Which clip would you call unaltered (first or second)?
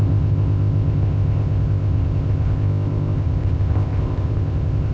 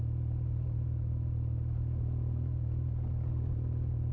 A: second